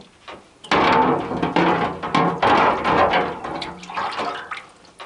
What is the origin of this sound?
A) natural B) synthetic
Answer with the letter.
A